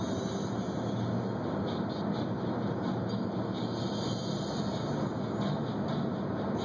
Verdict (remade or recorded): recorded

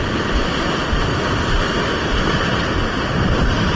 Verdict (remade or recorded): recorded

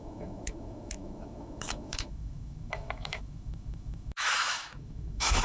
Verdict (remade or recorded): remade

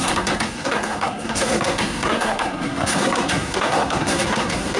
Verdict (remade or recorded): remade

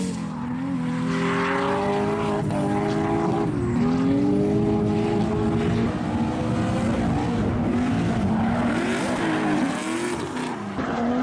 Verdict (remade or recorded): recorded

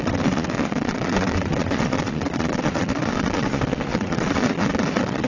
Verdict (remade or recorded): remade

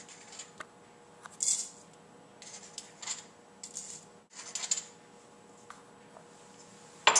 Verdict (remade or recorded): recorded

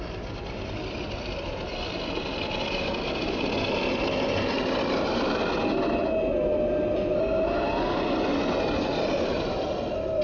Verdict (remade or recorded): recorded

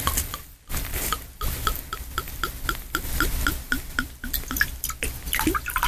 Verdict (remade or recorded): recorded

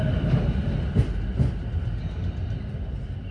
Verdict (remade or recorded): recorded